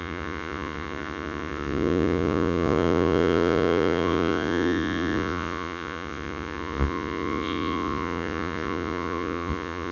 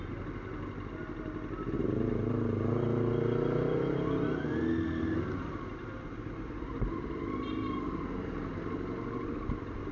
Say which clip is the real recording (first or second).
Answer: second